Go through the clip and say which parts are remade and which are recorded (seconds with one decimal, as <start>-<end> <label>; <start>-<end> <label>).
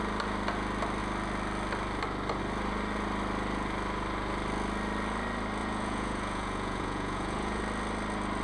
0.0-5.6 recorded; 5.6-7.6 remade; 7.6-8.4 recorded